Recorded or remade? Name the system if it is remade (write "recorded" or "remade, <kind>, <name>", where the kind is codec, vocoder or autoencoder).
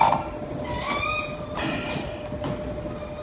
recorded